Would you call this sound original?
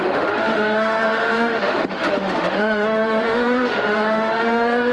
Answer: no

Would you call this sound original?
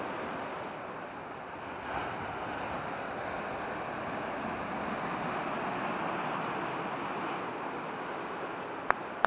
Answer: yes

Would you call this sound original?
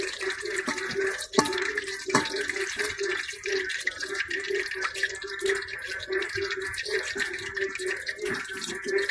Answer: no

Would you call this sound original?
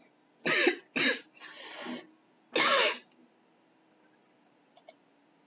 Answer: yes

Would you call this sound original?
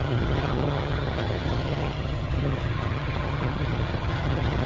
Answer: no